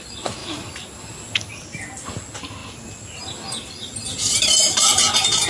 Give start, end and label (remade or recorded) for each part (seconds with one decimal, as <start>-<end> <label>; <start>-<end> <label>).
0.0-5.5 recorded